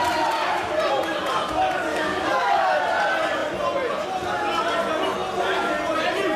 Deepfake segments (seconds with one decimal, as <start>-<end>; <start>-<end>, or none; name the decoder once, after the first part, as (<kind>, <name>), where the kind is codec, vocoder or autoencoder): 1.9-2.8 (codec, DAC)